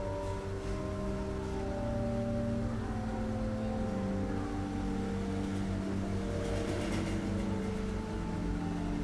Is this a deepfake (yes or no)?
no